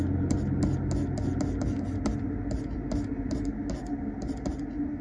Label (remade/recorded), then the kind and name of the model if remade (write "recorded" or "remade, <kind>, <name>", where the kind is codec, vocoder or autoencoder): recorded